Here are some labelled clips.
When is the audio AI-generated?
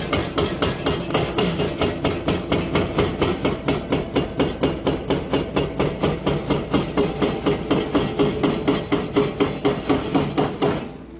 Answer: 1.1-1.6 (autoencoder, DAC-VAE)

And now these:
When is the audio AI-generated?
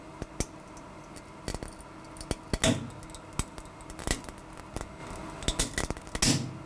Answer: none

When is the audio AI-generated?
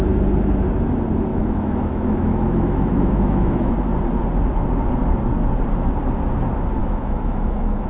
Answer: 1.3-3.7 (autoencoder, DAC-VAE); 6.8-7.9